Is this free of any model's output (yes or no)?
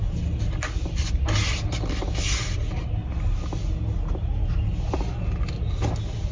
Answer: yes